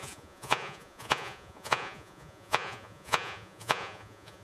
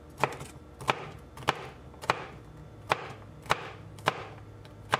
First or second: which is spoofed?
first